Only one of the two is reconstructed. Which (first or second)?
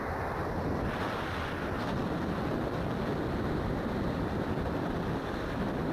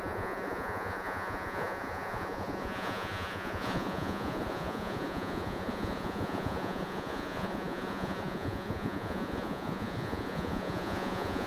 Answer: second